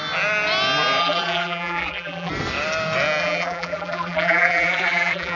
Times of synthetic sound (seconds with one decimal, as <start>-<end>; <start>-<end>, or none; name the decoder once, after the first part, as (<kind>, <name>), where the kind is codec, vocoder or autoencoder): 1.0-2.3 (vocoder, BigVGAN v2); 3.2-5.4